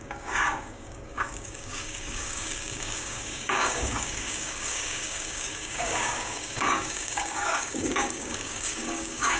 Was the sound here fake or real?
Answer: fake